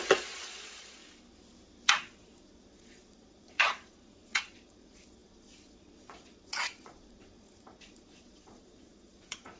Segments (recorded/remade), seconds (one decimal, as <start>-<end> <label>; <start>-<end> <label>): 0.0-1.0 remade; 1.0-1.9 recorded; 1.9-9.6 remade